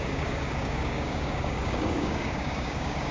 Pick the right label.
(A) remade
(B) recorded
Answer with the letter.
A